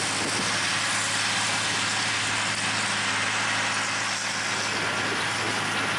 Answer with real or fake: real